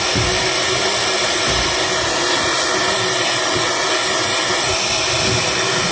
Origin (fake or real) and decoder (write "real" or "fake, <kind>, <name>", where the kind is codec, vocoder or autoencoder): real